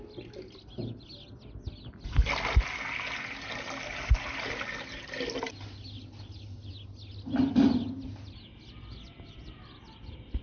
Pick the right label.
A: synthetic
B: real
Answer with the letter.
B